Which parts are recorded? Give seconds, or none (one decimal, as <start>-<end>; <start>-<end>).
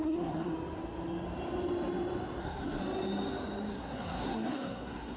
0.5-2.4; 2.8-3.7